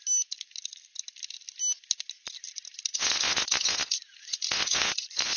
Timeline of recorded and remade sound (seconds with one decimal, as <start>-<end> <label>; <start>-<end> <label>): 0.0-2.9 recorded; 2.9-5.4 remade